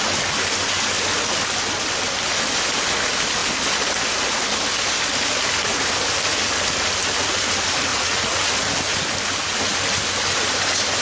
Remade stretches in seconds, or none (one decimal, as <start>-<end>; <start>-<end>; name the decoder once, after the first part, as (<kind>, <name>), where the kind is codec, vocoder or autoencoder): 7.9-8.5 (vocoder, Vocos)